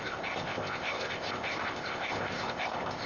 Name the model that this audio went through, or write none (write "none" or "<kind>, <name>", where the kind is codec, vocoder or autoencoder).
codec, ZipCodec